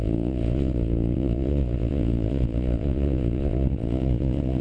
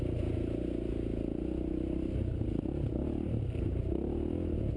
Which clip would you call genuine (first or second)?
second